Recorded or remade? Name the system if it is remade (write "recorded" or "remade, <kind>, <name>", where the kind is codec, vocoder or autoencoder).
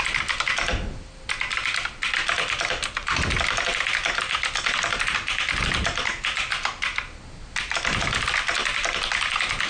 recorded